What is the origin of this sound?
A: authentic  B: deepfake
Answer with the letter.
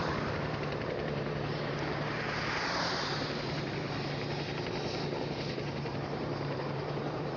B